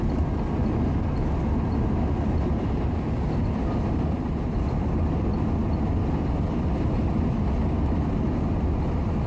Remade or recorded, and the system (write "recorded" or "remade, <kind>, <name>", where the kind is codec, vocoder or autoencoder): recorded